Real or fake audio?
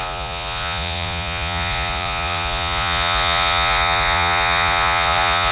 fake